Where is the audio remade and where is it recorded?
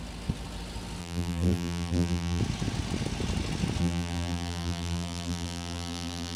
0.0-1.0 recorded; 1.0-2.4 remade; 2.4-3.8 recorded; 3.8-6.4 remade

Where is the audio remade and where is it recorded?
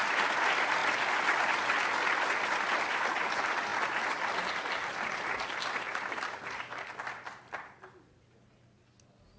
0.0-3.7 recorded; 3.7-8.1 remade; 8.1-9.4 recorded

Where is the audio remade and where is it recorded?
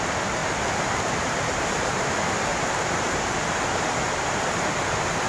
0.0-0.4 recorded; 0.4-1.4 remade; 1.4-2.5 recorded; 2.5-3.3 remade; 3.3-5.3 recorded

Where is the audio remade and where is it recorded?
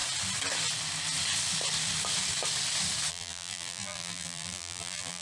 0.0-3.1 recorded; 3.1-5.2 remade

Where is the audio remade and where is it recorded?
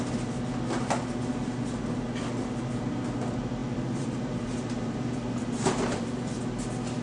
0.0-1.3 recorded; 1.3-1.8 remade; 1.8-3.6 recorded; 3.6-6.4 remade; 6.4-7.0 recorded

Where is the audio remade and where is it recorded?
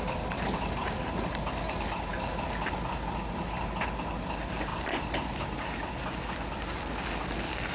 0.0-0.8 recorded; 0.8-1.5 remade; 1.5-4.7 recorded; 4.7-5.6 remade; 5.6-7.7 recorded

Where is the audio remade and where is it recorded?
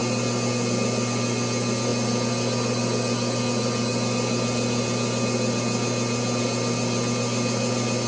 0.0-8.1 recorded